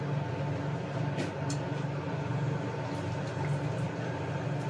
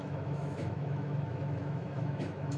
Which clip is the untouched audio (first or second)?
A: first